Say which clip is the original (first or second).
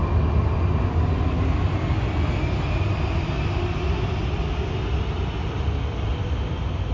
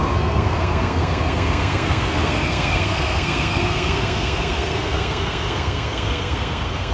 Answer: first